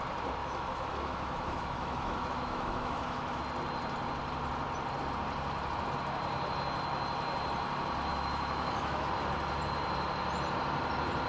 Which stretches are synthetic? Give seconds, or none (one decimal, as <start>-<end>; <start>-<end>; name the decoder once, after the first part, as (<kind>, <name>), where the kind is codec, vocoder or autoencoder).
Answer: 0.4-3.4 (autoencoder, DAC-VAE); 8.1-9.1